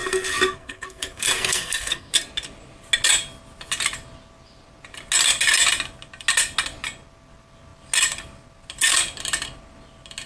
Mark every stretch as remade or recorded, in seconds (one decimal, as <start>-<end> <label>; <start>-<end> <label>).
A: 0.0-2.1 remade; 2.1-10.3 recorded